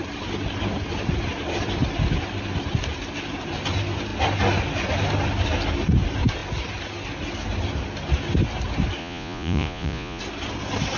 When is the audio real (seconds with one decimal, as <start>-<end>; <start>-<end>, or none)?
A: 0.0-9.0; 10.2-11.0